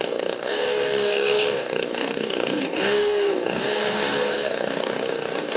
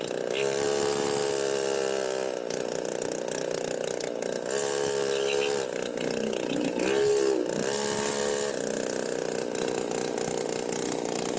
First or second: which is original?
second